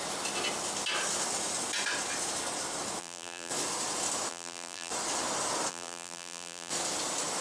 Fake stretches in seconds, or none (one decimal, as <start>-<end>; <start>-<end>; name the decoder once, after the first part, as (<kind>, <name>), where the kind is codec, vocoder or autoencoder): 3.0-3.5 (vocoder, BigVGAN v2); 4.3-4.9; 5.7-6.7